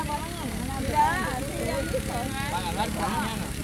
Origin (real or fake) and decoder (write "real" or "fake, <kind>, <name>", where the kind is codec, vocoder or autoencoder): real